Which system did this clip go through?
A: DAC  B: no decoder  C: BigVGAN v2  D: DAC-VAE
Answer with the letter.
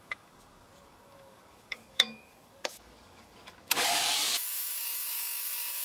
A